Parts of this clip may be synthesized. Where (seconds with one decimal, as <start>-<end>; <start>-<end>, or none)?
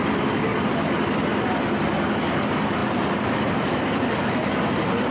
none